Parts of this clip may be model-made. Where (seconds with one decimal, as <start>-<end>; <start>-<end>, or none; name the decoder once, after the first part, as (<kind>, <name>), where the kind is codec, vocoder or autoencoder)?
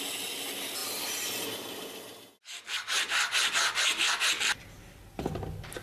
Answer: none